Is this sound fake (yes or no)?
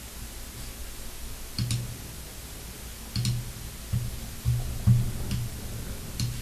no